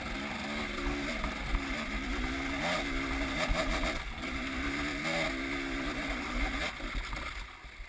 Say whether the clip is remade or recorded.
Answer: recorded